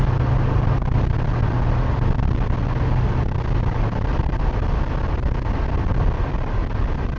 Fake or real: real